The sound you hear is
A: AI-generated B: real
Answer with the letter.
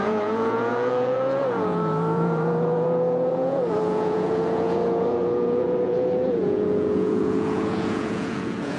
A